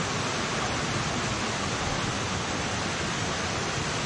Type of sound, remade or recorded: recorded